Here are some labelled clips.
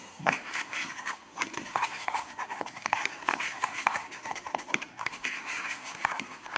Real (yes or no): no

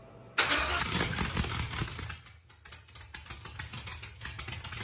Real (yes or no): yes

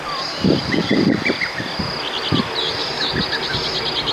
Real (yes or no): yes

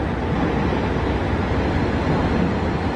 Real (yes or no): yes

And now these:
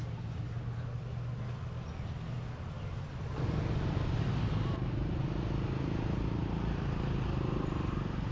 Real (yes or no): yes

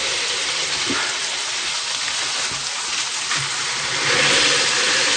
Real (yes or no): yes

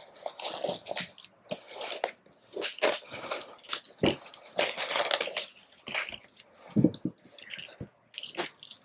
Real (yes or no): yes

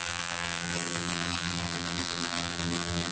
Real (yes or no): no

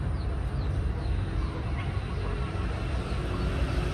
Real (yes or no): yes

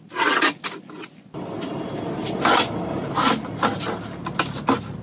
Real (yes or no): yes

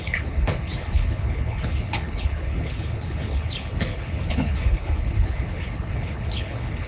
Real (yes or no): no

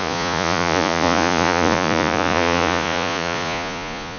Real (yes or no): no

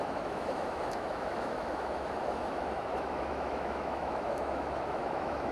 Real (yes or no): no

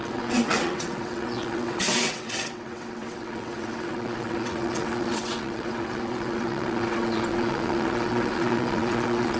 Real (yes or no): no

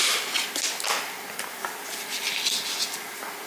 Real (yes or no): yes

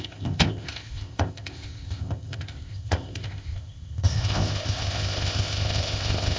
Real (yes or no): no